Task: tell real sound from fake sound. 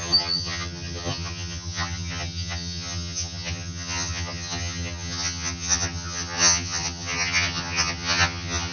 fake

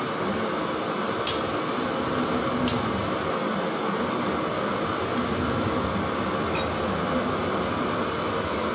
real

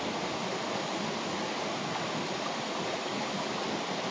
real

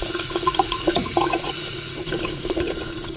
fake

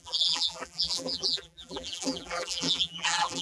fake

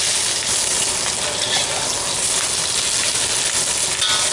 real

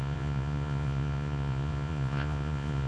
fake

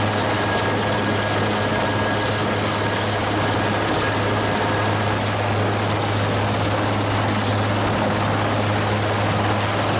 real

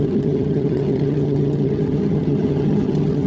fake